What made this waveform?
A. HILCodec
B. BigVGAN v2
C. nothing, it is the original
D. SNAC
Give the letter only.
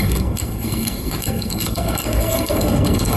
D